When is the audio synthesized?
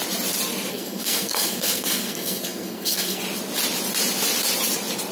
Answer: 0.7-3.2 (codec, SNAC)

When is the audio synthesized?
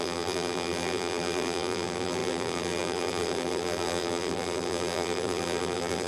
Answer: 0.0-6.1 (vocoder, BigVGAN v2)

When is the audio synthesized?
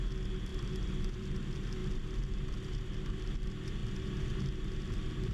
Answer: 0.5-1.1 (vocoder, BigVGAN v2)